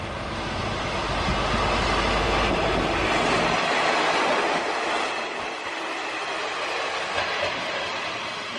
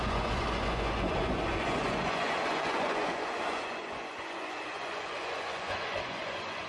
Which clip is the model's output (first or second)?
second